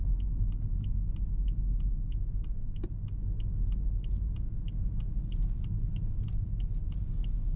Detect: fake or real real